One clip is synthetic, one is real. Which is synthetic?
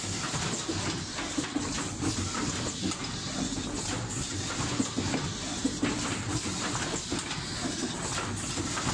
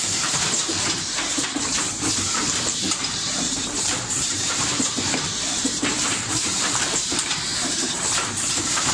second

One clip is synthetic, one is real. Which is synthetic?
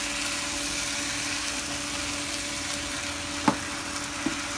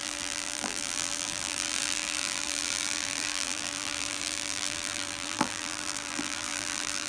second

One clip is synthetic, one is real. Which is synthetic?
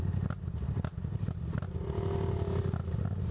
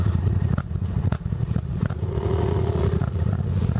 second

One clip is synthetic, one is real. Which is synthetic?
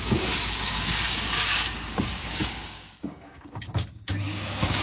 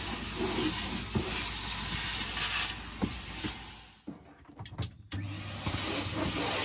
first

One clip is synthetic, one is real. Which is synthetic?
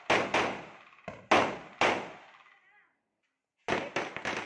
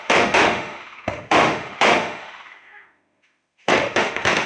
second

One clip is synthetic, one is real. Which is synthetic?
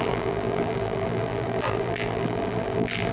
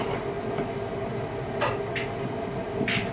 first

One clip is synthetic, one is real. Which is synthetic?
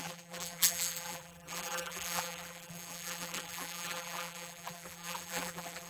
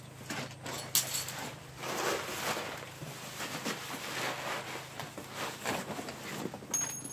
first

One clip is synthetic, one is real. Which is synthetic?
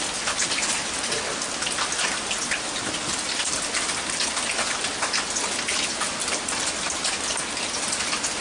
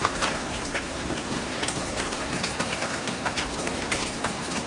second